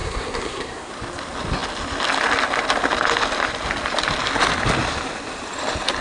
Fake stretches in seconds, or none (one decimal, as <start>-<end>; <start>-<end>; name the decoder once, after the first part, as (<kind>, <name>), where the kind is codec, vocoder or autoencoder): 0.0-0.9 (codec, SNAC)